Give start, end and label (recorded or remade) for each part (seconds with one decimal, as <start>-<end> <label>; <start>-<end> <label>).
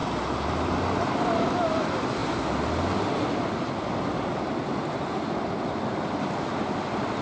0.0-7.2 recorded